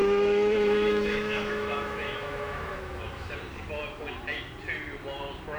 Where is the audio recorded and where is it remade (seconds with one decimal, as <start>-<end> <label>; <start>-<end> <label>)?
0.0-3.4 remade; 3.4-5.6 recorded